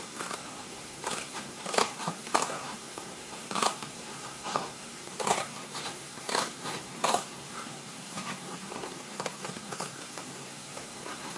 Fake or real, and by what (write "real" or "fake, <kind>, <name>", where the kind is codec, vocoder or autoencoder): fake, codec, SNAC